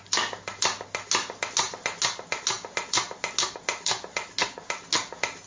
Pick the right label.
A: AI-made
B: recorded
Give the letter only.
B